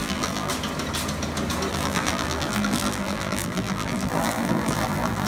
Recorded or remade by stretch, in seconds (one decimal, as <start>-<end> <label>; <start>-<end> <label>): 0.0-0.5 remade; 0.5-1.7 recorded; 1.7-5.3 remade